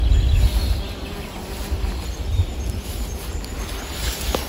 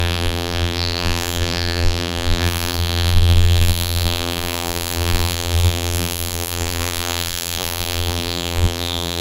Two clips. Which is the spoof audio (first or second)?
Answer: second